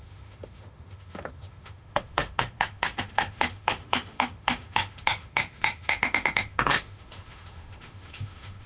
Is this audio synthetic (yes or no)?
yes